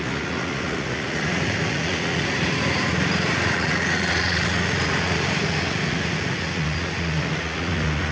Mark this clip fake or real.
fake